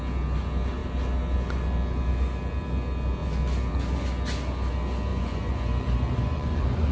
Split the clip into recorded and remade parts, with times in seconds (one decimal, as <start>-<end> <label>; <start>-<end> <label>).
0.0-5.1 recorded; 5.1-6.9 remade